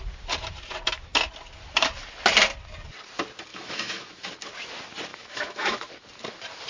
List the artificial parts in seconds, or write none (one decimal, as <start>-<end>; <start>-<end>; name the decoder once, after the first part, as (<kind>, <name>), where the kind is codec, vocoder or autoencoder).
3.5-4.3 (autoencoder, DAC-VAE); 5.1-5.9